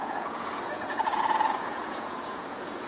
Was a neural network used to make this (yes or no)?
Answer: yes